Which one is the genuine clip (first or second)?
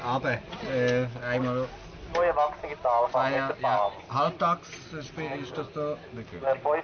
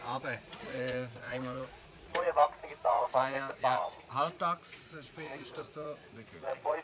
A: first